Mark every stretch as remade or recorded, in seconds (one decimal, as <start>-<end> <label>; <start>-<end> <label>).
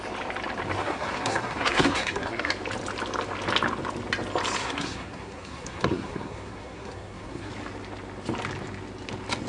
0.0-0.8 recorded; 0.8-2.5 remade; 2.5-4.6 recorded; 4.6-7.5 remade; 7.5-9.5 recorded